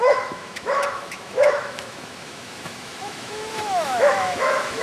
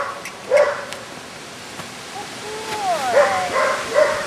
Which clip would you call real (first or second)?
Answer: second